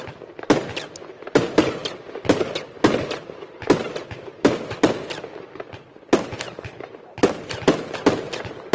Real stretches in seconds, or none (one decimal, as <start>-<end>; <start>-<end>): 0.0-8.7